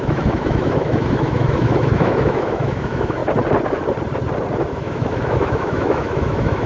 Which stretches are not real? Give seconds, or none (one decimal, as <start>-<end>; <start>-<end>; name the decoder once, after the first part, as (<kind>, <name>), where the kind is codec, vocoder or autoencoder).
0.0-3.2 (autoencoder, DAC-VAE); 4.6-6.7